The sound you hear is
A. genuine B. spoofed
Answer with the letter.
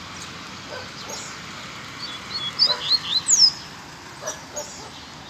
A